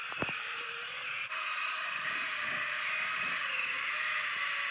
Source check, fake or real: fake